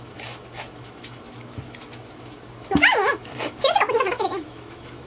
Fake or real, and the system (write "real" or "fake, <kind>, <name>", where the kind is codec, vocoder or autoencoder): fake, autoencoder, DAC-VAE